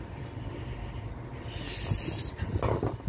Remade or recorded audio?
recorded